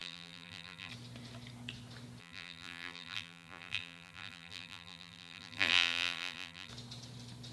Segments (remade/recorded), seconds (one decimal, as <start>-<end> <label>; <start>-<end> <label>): 0.0-0.9 remade; 0.9-2.2 recorded; 2.2-6.7 remade; 6.7-7.5 recorded